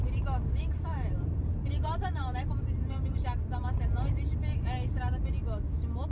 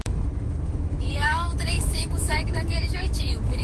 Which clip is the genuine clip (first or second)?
first